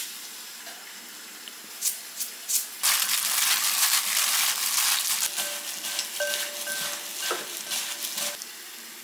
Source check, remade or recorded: recorded